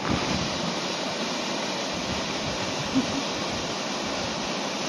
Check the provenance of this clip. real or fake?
real